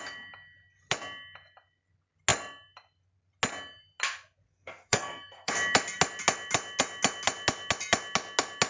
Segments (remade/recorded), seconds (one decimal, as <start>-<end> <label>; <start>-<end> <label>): 0.0-4.5 recorded; 4.5-5.5 remade; 5.5-8.7 recorded